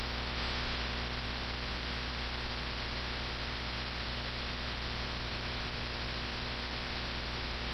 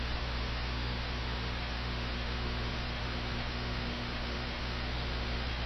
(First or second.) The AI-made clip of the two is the second